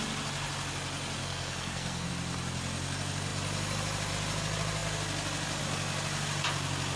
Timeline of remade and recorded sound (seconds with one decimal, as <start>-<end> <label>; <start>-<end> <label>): 0.0-1.2 recorded; 1.2-2.1 remade; 2.1-7.0 recorded